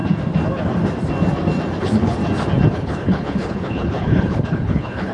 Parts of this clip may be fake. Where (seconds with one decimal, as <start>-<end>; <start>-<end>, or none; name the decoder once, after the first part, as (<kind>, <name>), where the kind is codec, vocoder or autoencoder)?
1.8-2.2 (codec, HILCodec); 2.7-5.1